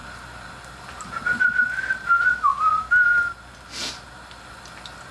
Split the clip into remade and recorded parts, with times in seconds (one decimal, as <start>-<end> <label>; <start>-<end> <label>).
0.0-5.1 recorded